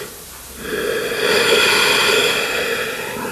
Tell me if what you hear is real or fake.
real